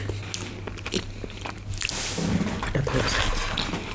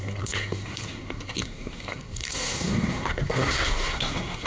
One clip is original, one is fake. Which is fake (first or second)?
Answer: second